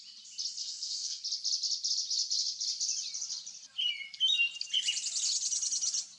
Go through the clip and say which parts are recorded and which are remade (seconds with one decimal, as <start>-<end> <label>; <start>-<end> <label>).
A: 0.0-0.6 recorded; 0.6-1.2 remade; 1.2-6.2 recorded